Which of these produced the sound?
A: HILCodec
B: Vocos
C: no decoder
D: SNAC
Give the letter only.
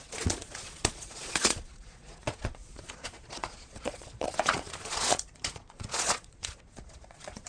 B